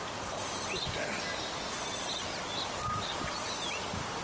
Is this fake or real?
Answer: real